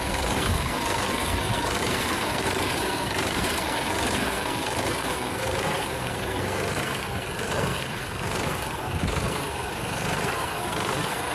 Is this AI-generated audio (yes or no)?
yes